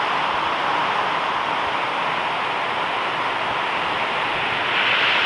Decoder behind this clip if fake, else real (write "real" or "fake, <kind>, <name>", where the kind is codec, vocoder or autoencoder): real